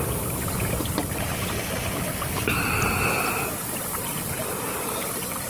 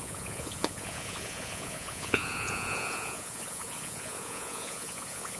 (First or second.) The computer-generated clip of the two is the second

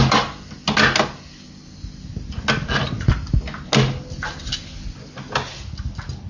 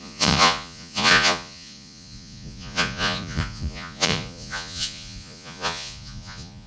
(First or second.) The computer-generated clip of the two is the second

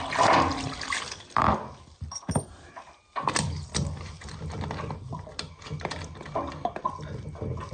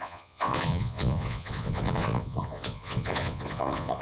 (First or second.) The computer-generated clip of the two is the second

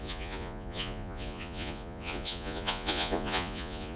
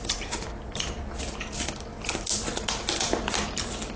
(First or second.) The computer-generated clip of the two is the first